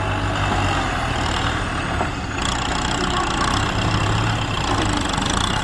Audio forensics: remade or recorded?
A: recorded